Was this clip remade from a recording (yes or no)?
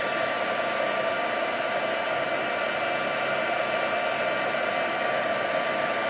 no